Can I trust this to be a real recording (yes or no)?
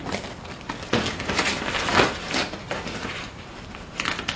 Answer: yes